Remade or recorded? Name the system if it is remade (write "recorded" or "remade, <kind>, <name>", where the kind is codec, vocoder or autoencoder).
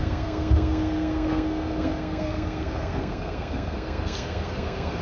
remade, codec, SNAC